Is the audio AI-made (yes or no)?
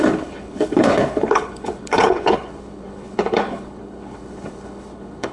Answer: yes